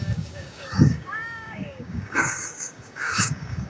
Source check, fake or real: fake